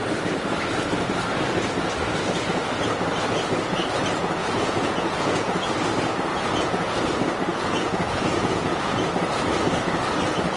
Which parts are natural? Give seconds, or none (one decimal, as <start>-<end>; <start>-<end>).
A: 0.0-4.4; 5.7-6.3; 7.0-7.5; 9.1-10.6